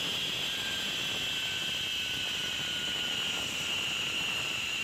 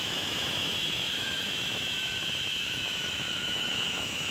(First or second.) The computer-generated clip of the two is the second